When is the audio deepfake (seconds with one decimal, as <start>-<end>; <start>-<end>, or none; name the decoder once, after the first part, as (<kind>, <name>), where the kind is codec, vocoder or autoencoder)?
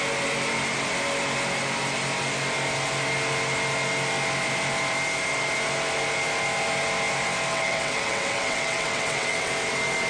7.5-9.5 (vocoder, WaveNeXt)